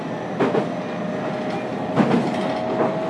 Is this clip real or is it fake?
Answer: real